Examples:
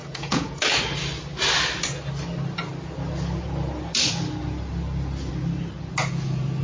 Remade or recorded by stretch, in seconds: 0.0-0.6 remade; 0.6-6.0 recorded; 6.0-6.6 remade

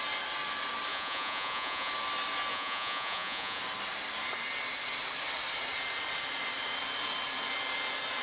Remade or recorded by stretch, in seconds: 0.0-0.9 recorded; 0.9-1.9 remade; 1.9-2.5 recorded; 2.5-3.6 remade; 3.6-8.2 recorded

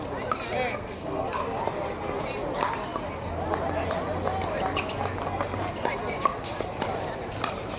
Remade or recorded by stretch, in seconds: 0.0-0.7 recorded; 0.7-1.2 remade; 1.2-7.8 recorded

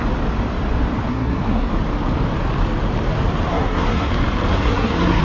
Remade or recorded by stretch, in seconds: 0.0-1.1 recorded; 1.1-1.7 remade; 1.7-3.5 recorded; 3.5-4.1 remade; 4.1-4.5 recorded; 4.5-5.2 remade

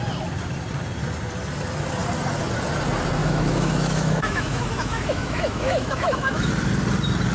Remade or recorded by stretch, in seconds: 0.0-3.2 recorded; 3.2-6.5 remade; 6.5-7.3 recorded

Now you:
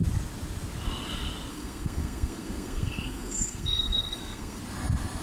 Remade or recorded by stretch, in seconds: 0.0-1.5 recorded; 1.5-4.6 remade; 4.6-5.2 recorded